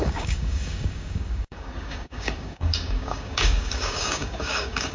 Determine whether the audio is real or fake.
fake